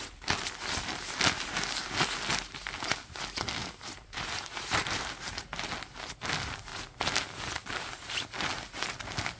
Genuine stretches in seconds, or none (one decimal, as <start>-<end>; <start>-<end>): 0.0-3.6; 5.2-9.4